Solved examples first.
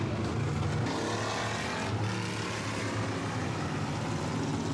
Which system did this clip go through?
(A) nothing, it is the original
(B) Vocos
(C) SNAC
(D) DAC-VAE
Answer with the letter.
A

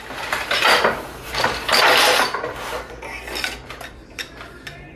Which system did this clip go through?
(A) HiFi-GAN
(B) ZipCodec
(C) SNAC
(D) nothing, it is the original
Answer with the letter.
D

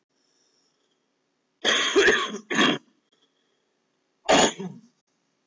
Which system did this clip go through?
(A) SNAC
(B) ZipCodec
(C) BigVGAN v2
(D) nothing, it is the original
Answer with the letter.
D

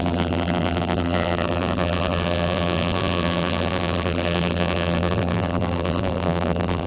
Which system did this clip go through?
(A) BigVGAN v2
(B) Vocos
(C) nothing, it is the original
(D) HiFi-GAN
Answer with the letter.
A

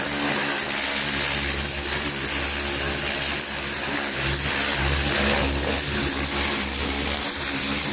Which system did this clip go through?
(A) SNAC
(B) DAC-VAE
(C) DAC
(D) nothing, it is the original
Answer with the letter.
D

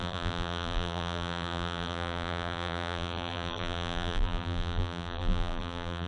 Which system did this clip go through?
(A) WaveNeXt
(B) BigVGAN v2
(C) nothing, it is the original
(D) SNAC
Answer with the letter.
B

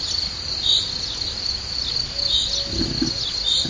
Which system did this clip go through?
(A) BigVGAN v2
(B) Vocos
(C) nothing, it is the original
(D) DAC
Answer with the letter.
C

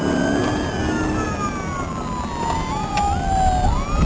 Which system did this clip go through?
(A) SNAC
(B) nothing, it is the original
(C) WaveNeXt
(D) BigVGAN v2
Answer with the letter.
B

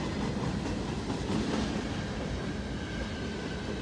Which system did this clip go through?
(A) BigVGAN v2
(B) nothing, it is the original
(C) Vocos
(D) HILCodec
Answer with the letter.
B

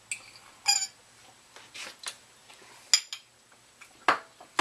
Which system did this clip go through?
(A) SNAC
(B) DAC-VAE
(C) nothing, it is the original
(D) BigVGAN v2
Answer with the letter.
C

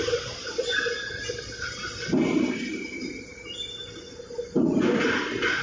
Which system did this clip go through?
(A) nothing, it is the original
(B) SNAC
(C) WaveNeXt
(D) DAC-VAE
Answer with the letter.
A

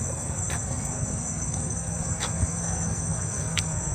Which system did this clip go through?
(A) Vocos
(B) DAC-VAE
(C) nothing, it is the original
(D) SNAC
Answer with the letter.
D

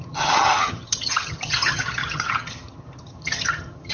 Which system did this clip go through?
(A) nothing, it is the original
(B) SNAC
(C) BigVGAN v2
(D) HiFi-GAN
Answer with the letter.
D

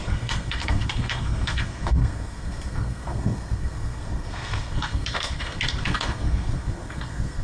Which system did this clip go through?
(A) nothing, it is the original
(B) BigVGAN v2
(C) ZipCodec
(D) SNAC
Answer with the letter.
D